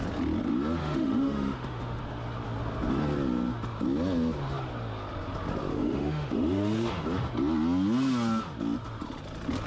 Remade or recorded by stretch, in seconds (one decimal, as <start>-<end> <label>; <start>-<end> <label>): 0.0-0.8 recorded; 0.8-2.0 remade; 2.0-5.7 recorded; 5.7-6.9 remade; 6.9-9.7 recorded